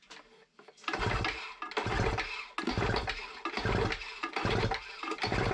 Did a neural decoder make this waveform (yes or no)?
no